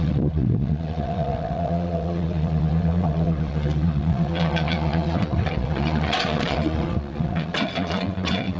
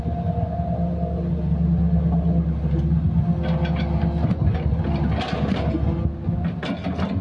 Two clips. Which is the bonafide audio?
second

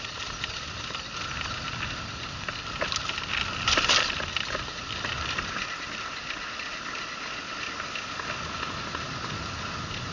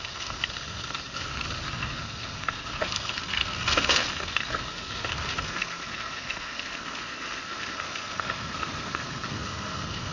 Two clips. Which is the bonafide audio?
first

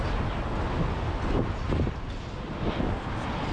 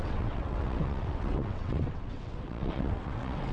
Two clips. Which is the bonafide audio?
first